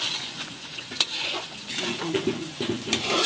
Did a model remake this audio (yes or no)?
yes